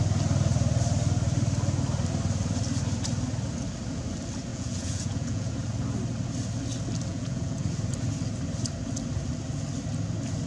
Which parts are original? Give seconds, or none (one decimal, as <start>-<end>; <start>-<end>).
0.0-4.5; 5.5-7.1; 7.7-10.5